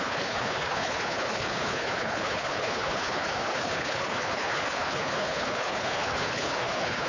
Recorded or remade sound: remade